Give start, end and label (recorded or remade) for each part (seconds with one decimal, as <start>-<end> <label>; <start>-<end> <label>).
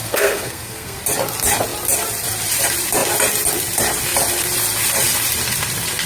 0.0-1.0 remade; 1.0-6.1 recorded